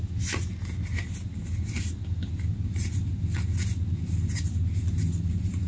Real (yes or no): yes